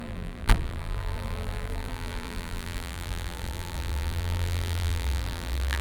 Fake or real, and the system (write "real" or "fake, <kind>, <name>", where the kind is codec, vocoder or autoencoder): fake, vocoder, BigVGAN v2